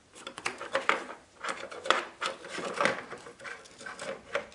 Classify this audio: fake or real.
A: fake